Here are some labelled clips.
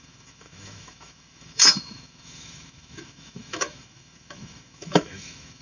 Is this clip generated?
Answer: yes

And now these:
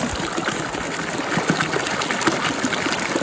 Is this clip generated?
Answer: no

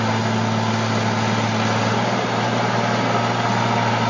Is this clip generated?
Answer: no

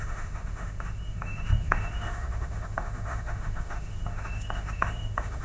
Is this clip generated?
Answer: yes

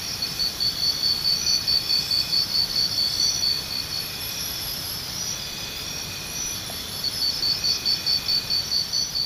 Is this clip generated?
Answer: no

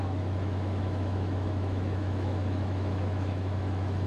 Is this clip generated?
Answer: yes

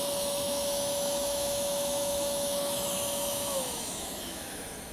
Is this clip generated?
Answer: yes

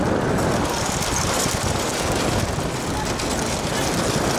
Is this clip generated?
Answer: no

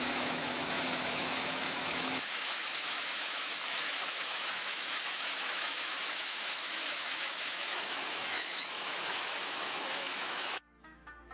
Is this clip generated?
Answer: yes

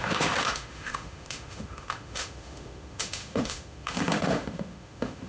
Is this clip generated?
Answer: yes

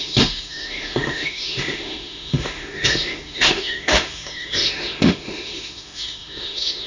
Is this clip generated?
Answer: yes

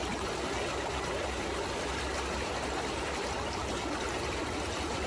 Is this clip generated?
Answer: no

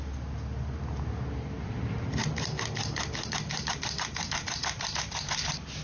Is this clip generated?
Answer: no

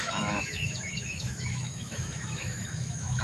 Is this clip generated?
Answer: yes